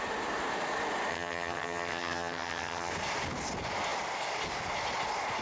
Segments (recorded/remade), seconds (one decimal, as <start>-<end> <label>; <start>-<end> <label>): 0.0-1.1 recorded; 1.1-2.9 remade; 2.9-5.4 recorded

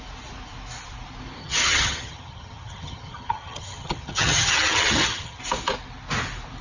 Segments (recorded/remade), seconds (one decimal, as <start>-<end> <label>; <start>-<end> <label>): 0.0-1.4 recorded; 1.4-5.4 remade; 5.4-6.6 recorded

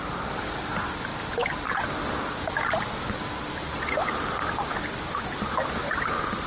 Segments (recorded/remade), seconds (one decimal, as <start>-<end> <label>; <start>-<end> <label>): 0.0-6.5 recorded

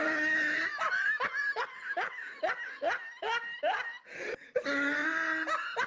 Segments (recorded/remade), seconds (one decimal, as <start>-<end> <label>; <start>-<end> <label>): 0.0-5.9 recorded

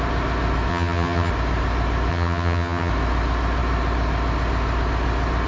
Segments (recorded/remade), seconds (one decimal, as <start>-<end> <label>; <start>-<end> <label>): 0.0-0.7 recorded; 0.7-1.3 remade; 1.3-2.1 recorded; 2.1-2.9 remade; 2.9-5.5 recorded

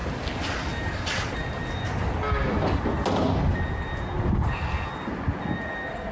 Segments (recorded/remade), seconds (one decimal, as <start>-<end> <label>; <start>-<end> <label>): 0.0-6.1 recorded